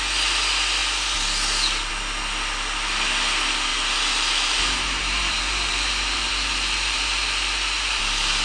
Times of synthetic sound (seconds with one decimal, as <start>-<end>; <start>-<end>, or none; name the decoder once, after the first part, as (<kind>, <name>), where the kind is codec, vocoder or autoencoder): 3.7-8.0 (vocoder, BigVGAN v2)